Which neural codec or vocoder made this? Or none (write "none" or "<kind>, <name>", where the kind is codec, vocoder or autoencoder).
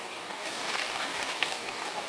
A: codec, DAC